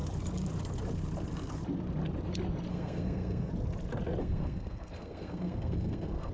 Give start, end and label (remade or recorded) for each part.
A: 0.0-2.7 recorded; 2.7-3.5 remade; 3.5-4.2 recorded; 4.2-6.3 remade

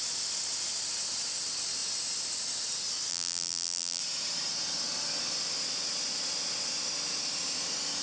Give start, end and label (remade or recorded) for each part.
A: 0.0-3.1 recorded; 3.1-4.0 remade; 4.0-8.0 recorded